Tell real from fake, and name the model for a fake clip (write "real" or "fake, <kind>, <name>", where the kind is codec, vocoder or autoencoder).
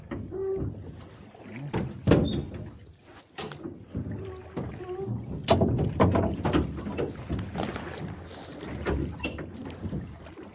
real